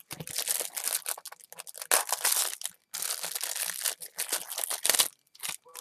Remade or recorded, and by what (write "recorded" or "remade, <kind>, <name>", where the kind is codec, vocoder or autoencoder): recorded